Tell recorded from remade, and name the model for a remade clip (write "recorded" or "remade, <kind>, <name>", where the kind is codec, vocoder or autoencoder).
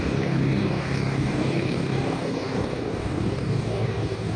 remade, codec, DAC